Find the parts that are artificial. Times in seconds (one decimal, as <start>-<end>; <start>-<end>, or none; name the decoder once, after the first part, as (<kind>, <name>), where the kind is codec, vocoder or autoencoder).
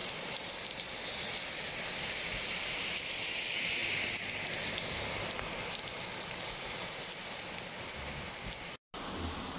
none